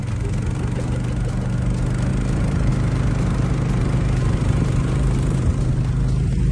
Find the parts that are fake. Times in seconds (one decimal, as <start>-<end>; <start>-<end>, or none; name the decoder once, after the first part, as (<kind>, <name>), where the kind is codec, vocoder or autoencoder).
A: 2.1-2.7 (vocoder, BigVGAN v2); 4.2-5.6